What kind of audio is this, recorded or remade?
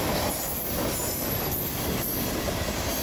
recorded